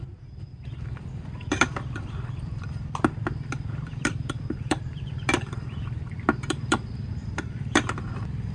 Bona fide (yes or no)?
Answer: no